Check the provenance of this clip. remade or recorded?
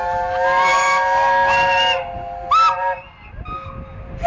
recorded